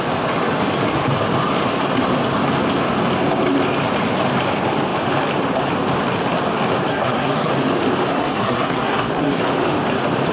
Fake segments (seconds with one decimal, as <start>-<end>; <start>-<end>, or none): 6.9-7.5; 8.1-9.4